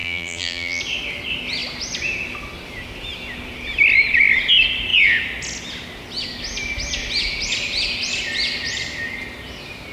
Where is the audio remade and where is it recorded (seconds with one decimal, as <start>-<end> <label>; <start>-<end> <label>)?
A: 0.0-0.8 remade; 0.8-9.9 recorded